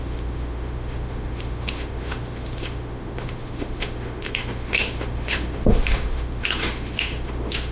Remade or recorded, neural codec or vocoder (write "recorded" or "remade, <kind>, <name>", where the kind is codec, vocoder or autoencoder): remade, autoencoder, DAC-VAE